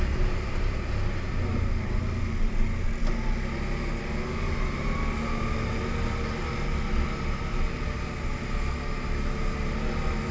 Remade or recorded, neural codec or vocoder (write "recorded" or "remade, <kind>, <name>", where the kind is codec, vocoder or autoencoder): recorded